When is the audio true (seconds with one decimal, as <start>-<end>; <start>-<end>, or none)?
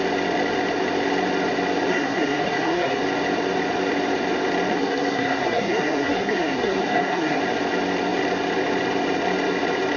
0.0-1.9; 3.0-4.7; 7.4-10.0